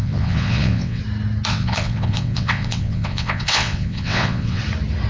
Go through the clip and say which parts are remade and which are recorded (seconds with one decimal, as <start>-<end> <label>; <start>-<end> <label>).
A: 0.0-1.0 remade; 1.0-1.5 recorded; 1.5-4.6 remade; 4.6-5.1 recorded